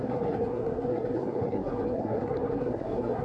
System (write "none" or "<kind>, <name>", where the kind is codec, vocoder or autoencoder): codec, SNAC